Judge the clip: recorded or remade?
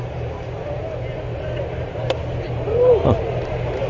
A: remade